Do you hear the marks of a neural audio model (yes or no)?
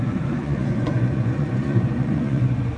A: yes